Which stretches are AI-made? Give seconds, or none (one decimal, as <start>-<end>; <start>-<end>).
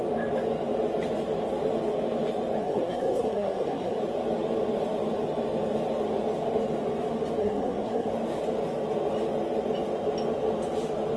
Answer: 2.6-4.0; 7.4-8.1